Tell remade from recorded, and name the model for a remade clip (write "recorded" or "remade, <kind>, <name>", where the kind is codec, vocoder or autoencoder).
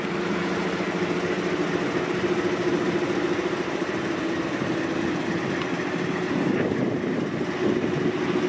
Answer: recorded